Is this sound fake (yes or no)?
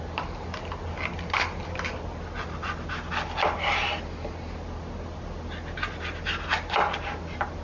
no